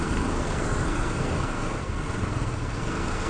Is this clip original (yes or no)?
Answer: no